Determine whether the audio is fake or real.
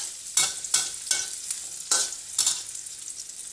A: real